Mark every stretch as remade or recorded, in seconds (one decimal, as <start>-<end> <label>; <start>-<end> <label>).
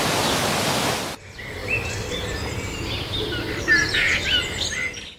0.0-5.2 recorded